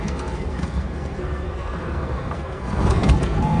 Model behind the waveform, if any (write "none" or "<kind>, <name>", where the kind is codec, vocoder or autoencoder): codec, SNAC